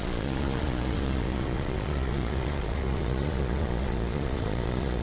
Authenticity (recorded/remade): remade